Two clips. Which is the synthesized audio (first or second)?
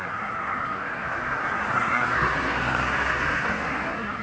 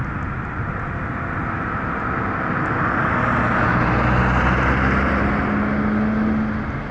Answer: first